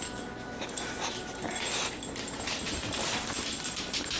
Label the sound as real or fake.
real